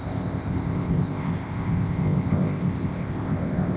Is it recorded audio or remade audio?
remade